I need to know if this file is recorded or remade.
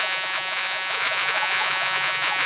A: remade